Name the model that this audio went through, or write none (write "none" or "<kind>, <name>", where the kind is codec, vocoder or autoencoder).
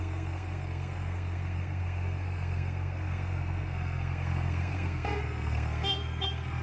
codec, SNAC